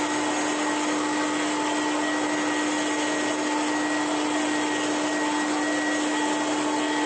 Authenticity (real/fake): real